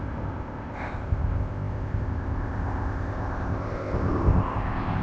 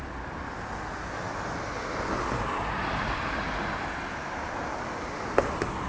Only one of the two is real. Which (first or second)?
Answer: second